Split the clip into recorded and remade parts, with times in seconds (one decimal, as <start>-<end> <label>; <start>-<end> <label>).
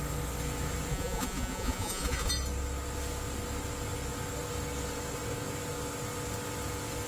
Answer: 0.0-0.9 recorded; 0.9-2.3 remade; 2.3-7.1 recorded